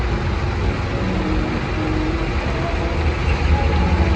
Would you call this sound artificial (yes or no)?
no